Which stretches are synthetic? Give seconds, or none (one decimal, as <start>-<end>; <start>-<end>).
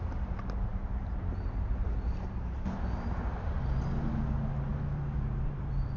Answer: 0.7-3.6; 4.7-6.0